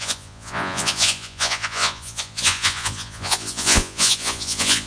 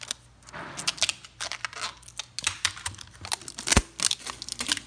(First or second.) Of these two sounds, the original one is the second